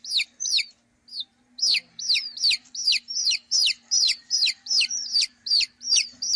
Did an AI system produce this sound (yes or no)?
yes